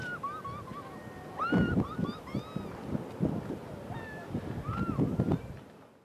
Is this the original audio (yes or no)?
yes